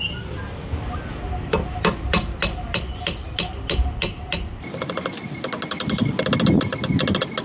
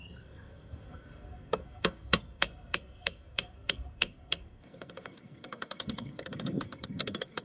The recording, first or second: first